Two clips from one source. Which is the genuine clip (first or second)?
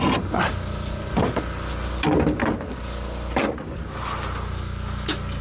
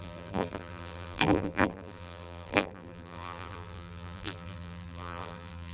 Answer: first